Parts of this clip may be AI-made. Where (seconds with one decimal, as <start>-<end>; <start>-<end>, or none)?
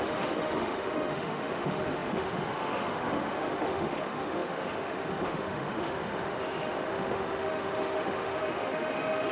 0.0-9.3